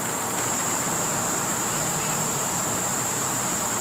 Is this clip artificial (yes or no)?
yes